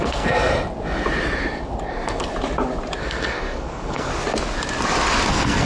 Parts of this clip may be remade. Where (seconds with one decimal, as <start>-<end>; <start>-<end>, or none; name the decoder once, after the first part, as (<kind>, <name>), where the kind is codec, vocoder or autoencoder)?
0.0-0.5 (codec, SNAC); 1.9-2.3; 3.0-4.1; 5.3-5.7